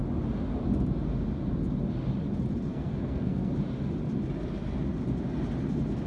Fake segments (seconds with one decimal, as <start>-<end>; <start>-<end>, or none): 2.7-3.5